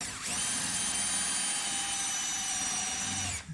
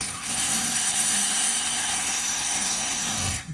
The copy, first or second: second